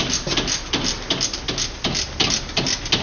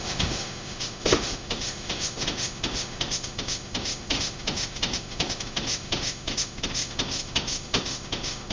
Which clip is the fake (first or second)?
second